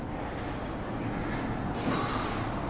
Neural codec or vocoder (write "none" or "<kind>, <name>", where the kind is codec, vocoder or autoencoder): none